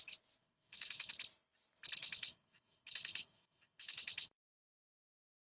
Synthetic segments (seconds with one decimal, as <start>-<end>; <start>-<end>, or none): 0.4-1.1; 2.0-5.5